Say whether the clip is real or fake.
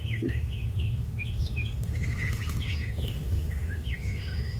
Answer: fake